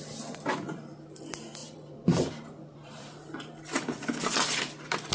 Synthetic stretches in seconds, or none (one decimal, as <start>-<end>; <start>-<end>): 1.6-5.1